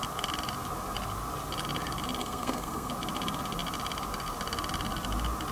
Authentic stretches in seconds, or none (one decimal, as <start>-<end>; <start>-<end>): 0.0-2.2; 2.9-5.5